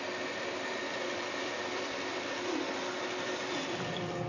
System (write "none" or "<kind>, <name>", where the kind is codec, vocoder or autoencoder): vocoder, BigVGAN v2